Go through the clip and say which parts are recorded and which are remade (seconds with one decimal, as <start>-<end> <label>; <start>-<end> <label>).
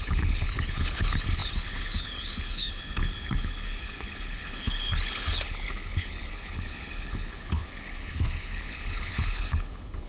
0.0-10.1 remade